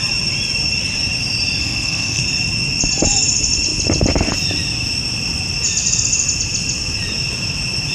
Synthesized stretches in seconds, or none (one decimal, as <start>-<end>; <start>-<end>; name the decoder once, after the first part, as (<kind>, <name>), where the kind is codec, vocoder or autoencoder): 1.6-2.2 (codec, SNAC)